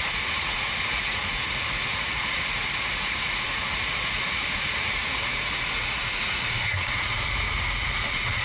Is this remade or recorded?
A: remade